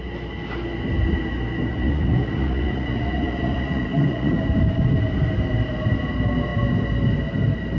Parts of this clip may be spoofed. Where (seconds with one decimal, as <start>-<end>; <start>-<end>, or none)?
1.7-4.4